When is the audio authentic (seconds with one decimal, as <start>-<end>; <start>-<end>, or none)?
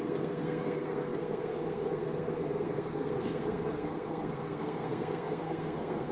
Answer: none